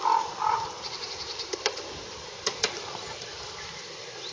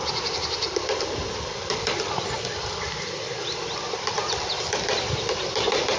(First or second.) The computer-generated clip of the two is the first